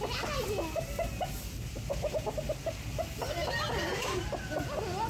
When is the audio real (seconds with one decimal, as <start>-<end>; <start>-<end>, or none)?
0.0-2.9; 4.3-5.1